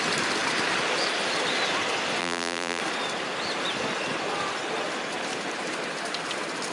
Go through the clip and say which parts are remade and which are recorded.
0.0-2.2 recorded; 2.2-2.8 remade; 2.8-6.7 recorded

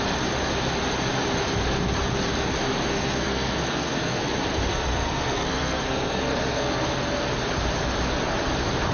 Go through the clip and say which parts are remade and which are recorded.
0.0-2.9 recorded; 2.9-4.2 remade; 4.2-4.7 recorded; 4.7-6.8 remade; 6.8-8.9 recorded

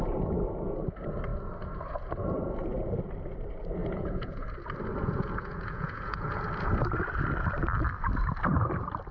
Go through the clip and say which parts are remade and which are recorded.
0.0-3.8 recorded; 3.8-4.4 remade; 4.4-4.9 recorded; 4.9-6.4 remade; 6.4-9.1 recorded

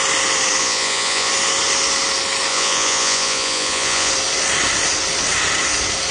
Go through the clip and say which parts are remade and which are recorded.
0.0-0.6 recorded; 0.6-1.3 remade; 1.3-2.5 recorded; 2.5-4.1 remade; 4.1-6.1 recorded